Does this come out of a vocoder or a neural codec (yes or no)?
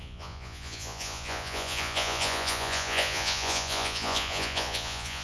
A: yes